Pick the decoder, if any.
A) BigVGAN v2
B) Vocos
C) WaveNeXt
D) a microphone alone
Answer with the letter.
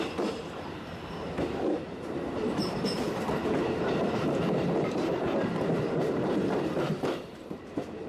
A